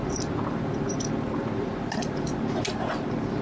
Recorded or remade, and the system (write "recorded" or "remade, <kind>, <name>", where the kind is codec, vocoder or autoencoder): recorded